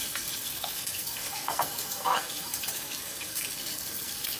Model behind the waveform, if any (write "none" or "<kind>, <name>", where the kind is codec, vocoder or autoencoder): codec, SNAC